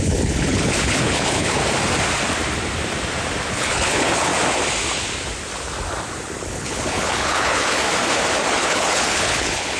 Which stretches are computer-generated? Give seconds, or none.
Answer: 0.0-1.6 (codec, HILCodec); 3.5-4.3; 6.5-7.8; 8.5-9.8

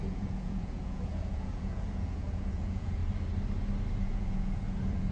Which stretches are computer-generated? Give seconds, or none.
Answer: 0.0-3.0 (vocoder, Vocos); 4.0-5.1

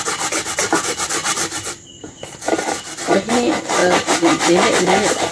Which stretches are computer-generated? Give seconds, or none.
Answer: none

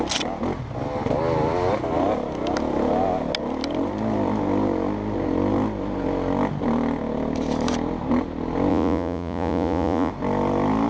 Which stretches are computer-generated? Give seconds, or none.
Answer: 8.7-10.1 (vocoder, Vocos)

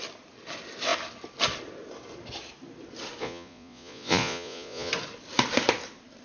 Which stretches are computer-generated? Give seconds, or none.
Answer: 3.2-4.9 (vocoder, Vocos)